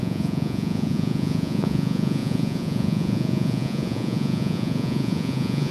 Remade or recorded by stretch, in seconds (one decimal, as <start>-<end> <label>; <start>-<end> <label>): 0.0-5.7 remade